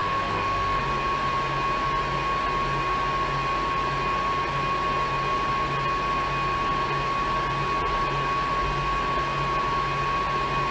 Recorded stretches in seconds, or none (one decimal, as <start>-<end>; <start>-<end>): 0.8-10.7